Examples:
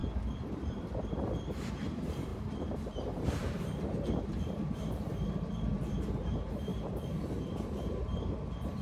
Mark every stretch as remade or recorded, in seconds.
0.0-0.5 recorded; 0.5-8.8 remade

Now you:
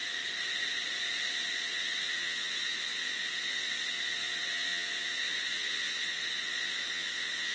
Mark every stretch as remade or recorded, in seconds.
0.0-1.3 recorded; 1.3-7.5 remade

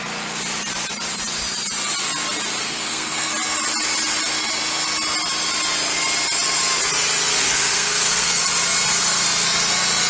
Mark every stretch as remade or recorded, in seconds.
0.0-2.6 recorded; 2.6-3.3 remade; 3.3-7.4 recorded; 7.4-8.4 remade; 8.4-10.1 recorded

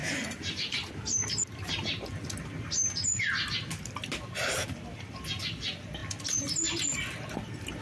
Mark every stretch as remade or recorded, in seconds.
0.0-0.9 remade; 0.9-6.0 recorded; 6.0-6.8 remade; 6.8-7.8 recorded

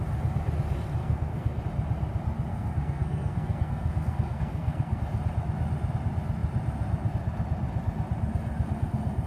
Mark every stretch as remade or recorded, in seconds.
0.0-1.0 recorded; 1.0-1.6 remade; 1.6-2.5 recorded; 2.5-5.0 remade; 5.0-9.3 recorded